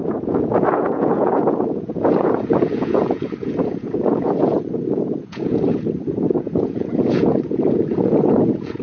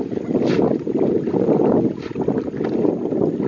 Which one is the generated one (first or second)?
first